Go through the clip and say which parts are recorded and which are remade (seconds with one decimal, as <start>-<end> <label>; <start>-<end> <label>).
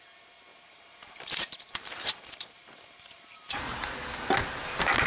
0.0-0.5 recorded; 0.5-3.6 remade; 3.6-5.1 recorded